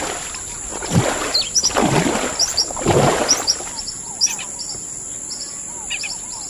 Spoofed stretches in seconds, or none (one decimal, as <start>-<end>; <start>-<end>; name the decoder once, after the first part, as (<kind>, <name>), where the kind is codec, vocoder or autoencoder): none